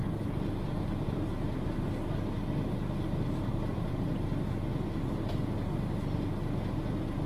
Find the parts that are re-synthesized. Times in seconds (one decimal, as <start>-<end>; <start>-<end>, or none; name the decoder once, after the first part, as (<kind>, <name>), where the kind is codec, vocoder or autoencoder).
0.0-1.6 (vocoder, BigVGAN v2); 3.5-4.1